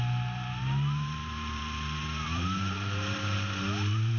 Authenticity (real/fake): fake